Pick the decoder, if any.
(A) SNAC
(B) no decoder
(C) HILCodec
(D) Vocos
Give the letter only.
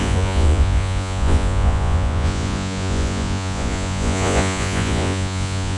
D